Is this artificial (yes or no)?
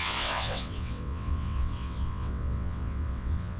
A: yes